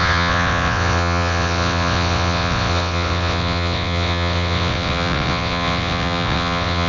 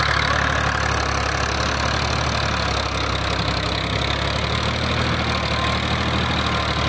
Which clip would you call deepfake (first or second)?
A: first